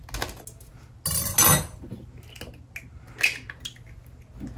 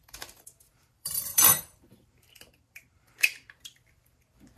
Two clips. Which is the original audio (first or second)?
first